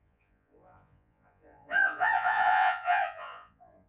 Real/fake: fake